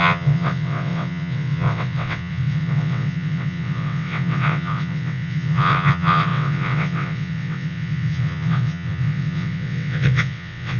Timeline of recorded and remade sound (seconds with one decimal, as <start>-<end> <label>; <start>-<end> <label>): 0.0-10.8 remade